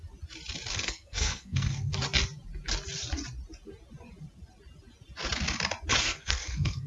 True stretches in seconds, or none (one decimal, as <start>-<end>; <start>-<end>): 0.0-0.7; 1.9-6.0